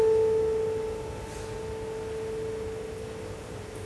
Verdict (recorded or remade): recorded